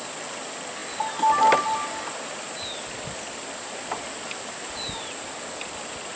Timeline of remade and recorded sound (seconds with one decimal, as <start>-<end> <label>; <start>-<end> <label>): 0.0-6.2 recorded